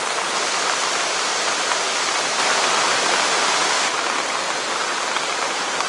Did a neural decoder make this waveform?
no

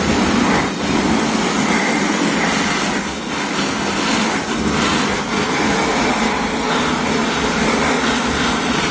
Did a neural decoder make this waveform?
no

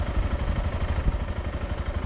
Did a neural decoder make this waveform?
no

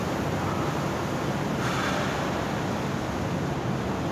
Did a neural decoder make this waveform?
no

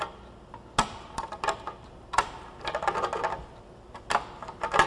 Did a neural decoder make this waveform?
no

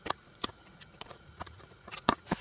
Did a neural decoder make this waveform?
yes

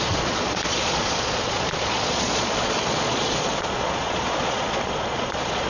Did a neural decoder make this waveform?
yes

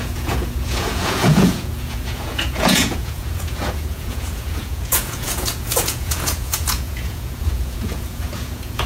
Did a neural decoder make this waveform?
yes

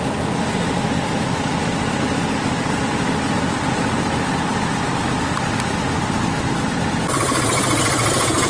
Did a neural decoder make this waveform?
no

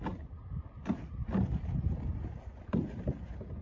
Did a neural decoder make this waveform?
no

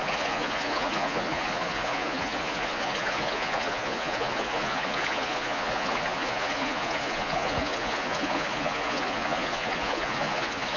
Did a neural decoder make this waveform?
yes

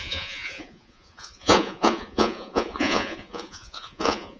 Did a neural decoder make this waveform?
yes